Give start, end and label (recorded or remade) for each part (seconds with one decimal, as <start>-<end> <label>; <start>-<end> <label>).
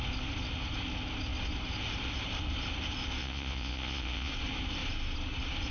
0.0-3.2 recorded; 3.2-4.3 remade; 4.3-5.7 recorded